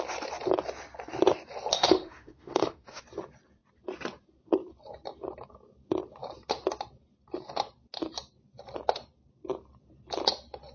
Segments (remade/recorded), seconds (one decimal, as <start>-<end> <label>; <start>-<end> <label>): 0.0-1.7 recorded; 1.7-3.0 remade; 3.0-10.7 recorded